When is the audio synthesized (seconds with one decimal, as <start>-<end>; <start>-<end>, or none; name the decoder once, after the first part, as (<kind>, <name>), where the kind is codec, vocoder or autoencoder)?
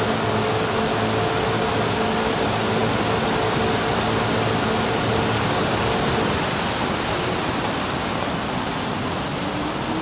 none